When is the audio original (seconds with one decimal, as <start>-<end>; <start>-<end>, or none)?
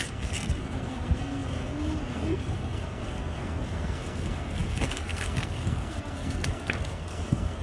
none